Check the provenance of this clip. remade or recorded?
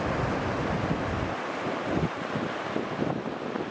recorded